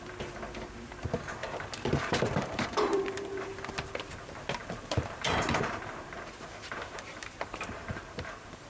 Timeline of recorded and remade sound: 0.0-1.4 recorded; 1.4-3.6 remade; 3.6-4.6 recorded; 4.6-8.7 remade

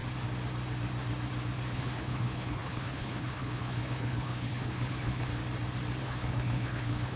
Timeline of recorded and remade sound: 0.0-1.7 recorded; 1.7-5.4 remade; 5.4-6.0 recorded; 6.0-7.2 remade

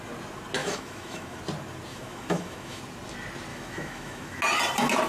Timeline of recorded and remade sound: 0.0-0.6 recorded; 0.6-1.4 remade; 1.4-1.9 recorded; 1.9-2.8 remade; 2.8-3.5 recorded; 3.5-4.4 remade; 4.4-5.1 recorded

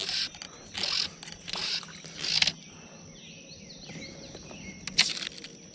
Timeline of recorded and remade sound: 0.0-5.7 recorded